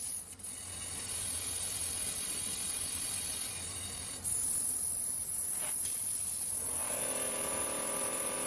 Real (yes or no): yes